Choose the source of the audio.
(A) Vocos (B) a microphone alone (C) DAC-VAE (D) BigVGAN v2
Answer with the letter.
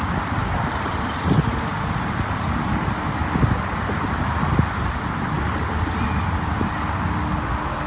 B